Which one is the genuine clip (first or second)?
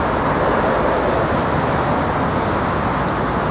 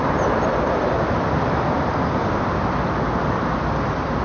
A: first